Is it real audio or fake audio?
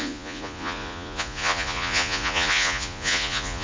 fake